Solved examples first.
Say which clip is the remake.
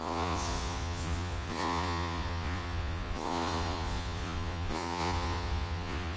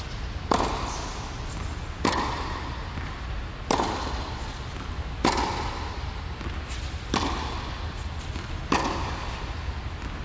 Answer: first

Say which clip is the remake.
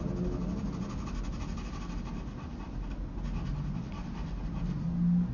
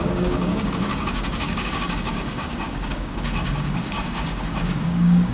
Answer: second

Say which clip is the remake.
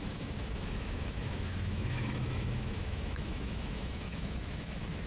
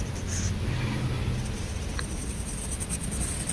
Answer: first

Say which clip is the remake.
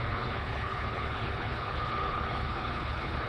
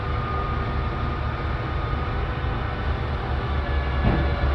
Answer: first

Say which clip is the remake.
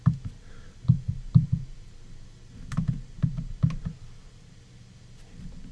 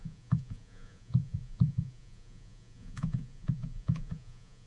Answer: second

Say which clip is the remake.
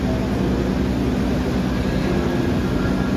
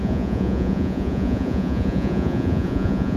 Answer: second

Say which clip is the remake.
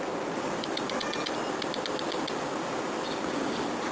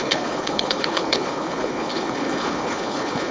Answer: second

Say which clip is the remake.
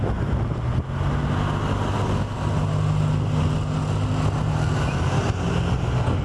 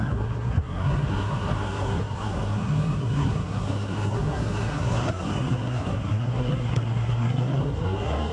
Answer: second